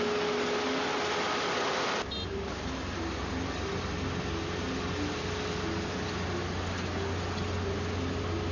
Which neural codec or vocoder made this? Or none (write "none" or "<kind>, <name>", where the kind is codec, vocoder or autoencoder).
none